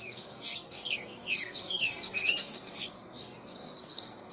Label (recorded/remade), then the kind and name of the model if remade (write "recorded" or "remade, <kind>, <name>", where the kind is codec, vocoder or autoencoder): remade, codec, SNAC